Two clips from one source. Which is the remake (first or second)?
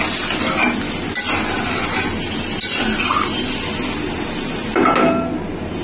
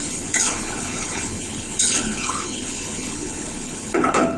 second